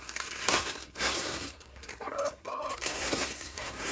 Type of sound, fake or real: fake